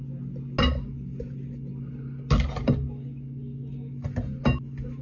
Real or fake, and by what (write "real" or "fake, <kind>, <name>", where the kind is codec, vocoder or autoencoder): real